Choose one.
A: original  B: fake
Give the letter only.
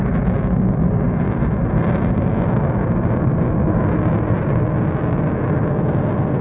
A